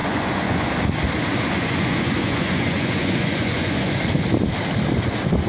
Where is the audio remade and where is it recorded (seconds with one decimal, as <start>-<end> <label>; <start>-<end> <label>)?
0.0-0.7 remade; 0.7-1.3 recorded; 1.3-4.0 remade; 4.0-5.5 recorded